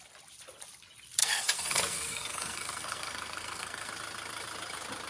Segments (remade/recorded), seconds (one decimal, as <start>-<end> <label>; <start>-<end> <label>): 0.0-1.2 recorded; 1.2-3.9 remade; 3.9-5.1 recorded